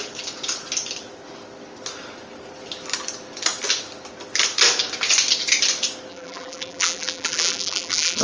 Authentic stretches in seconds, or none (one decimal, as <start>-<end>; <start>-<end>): 0.0-6.1